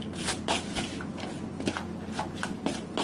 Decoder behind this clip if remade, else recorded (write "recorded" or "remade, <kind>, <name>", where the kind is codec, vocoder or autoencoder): recorded